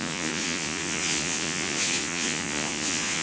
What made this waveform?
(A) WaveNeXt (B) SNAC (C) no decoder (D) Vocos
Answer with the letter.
D